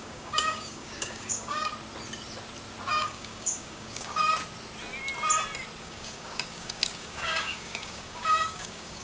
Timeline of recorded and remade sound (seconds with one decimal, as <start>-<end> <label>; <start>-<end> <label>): 0.0-1.7 remade; 1.7-2.9 recorded; 2.9-4.2 remade; 4.2-5.8 recorded; 5.8-9.0 remade